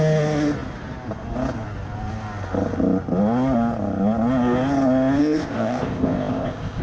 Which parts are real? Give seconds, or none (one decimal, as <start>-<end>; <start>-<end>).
0.0-5.2